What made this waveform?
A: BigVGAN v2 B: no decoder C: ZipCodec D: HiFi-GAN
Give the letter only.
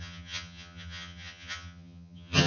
D